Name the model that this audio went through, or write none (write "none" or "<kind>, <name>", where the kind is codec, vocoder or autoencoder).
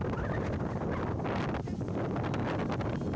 none